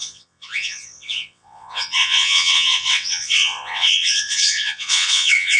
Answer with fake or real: fake